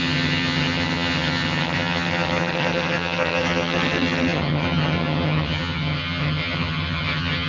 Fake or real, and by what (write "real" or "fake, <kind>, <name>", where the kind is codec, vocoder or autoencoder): fake, vocoder, HiFi-GAN